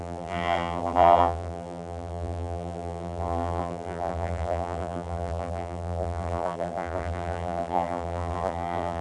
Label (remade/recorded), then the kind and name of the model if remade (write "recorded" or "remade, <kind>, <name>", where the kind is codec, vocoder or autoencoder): remade, vocoder, BigVGAN v2